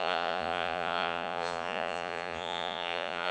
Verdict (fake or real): fake